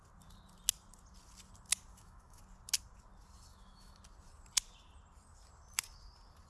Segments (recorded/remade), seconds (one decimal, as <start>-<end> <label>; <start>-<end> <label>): 0.0-1.9 recorded; 1.9-2.4 remade; 2.4-3.5 recorded; 3.5-4.0 remade; 4.0-6.5 recorded